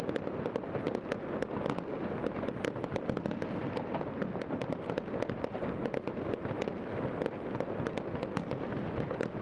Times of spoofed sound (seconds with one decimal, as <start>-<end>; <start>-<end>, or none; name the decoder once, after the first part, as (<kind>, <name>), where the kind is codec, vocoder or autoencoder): 3.6-4.7 (vocoder, BigVGAN v2)